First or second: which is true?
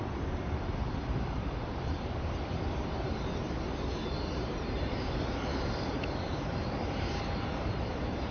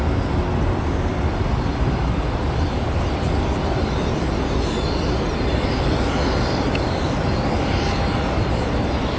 second